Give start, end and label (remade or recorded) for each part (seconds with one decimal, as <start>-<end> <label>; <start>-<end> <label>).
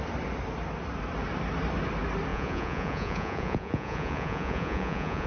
0.0-2.3 recorded; 2.3-5.3 remade